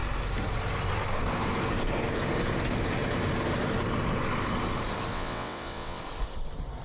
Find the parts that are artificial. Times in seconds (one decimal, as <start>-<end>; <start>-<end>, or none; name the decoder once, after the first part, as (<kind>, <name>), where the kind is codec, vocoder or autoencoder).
5.1-6.0 (vocoder, WaveNeXt)